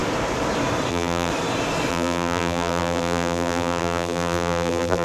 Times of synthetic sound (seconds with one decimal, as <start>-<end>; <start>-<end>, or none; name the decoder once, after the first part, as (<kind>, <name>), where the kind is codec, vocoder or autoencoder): 0.9-1.3 (vocoder, BigVGAN v2); 1.9-5.0